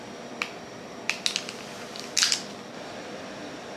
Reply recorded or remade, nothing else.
recorded